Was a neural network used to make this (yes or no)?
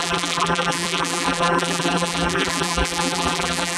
yes